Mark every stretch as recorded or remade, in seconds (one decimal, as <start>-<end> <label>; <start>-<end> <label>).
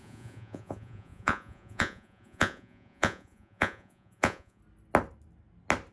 0.0-4.6 remade; 4.6-5.9 recorded